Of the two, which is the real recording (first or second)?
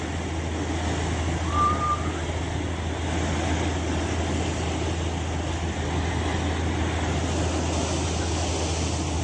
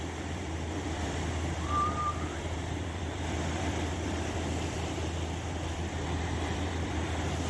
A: first